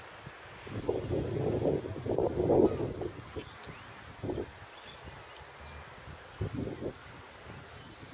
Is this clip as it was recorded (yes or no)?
yes